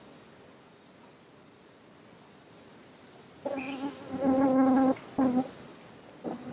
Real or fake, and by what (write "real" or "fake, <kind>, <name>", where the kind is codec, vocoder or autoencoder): real